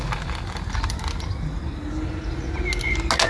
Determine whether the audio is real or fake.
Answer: real